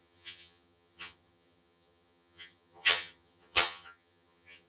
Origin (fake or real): fake